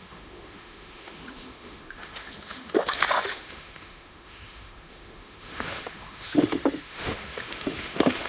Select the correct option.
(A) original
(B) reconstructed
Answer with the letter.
B